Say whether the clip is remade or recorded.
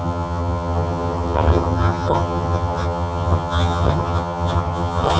remade